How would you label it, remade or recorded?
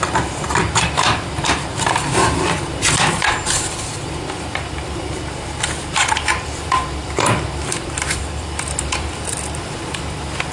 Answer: remade